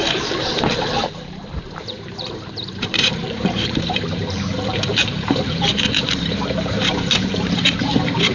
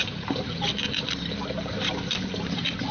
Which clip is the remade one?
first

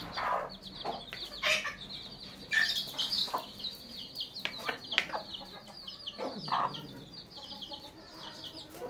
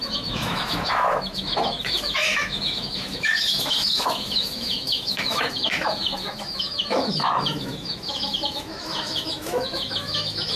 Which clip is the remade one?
second